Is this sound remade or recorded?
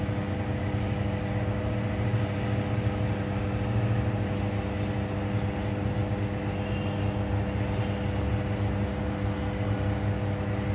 recorded